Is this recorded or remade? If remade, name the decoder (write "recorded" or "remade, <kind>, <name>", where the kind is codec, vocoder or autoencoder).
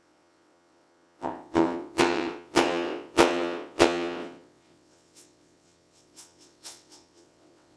remade, vocoder, WaveNeXt